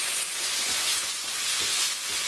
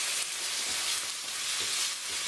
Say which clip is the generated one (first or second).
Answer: first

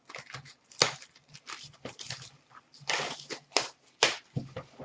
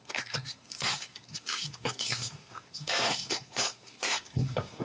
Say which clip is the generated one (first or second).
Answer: second